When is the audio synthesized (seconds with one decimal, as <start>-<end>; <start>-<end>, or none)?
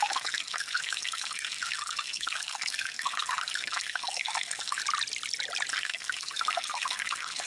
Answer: 0.0-4.8; 5.7-7.5